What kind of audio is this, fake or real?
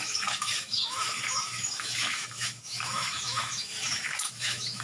fake